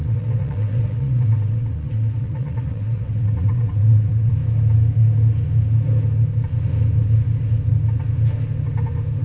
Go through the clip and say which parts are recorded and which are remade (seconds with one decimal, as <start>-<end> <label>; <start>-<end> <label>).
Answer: 0.0-4.3 remade; 4.3-9.2 recorded